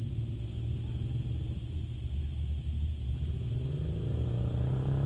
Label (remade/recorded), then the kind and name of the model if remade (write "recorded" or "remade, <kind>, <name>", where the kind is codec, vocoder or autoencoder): recorded